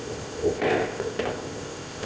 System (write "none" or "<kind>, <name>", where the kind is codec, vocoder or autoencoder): codec, ZipCodec